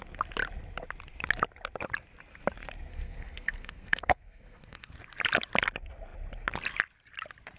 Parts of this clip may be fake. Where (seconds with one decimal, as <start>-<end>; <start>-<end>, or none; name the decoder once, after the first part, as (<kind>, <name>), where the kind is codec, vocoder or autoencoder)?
2.9-4.9 (codec, SNAC)